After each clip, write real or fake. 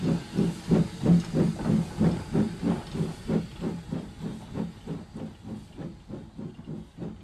real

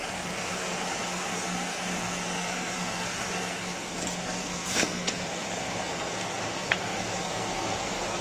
fake